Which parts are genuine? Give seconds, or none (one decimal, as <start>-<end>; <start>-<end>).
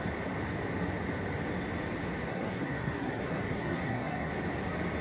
0.0-2.3; 4.3-5.0